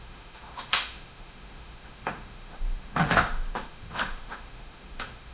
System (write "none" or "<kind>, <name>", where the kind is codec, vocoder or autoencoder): autoencoder, DAC-VAE